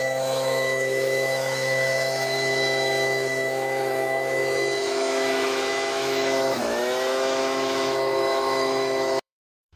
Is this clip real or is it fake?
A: fake